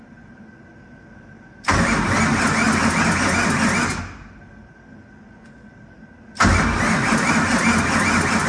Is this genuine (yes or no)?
yes